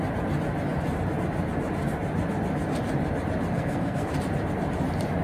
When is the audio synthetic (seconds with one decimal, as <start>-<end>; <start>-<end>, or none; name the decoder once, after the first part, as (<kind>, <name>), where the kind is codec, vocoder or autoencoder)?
3.5-4.1 (codec, SNAC)